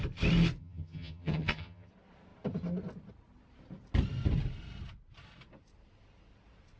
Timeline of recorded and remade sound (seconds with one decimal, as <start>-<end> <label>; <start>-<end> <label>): 0.0-0.6 recorded; 0.6-1.9 remade; 1.9-6.8 recorded